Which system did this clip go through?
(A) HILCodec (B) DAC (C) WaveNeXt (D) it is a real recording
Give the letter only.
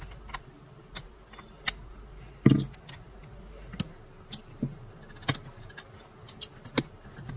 D